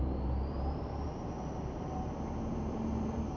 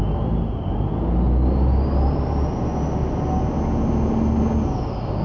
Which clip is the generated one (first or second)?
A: first